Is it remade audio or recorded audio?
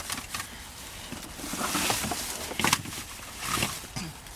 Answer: remade